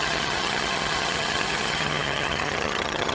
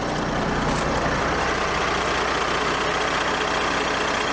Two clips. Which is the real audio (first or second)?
second